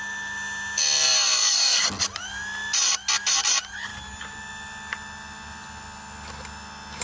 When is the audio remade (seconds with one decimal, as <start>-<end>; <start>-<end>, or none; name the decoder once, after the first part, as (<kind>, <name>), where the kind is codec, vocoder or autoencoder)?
none